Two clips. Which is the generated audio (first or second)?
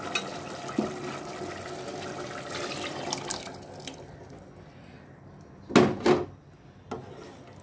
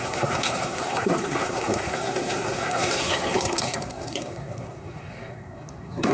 second